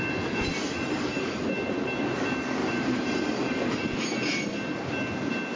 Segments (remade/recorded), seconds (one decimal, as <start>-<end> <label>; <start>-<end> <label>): 0.0-0.6 recorded; 0.6-1.4 remade; 1.4-2.6 recorded; 2.6-3.7 remade; 3.7-5.6 recorded